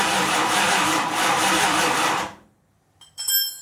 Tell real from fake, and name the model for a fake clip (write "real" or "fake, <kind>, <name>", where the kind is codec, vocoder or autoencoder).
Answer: fake, vocoder, BigVGAN v2